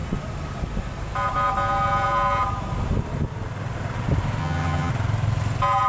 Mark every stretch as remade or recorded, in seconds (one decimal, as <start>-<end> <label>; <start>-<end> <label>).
0.0-4.4 recorded; 4.4-4.9 remade; 4.9-5.9 recorded